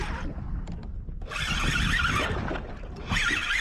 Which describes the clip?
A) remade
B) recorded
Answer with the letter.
B